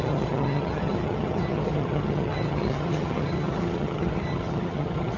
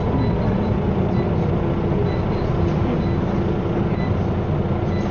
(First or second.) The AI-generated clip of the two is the first